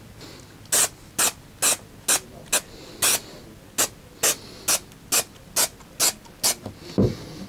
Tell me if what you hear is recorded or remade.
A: recorded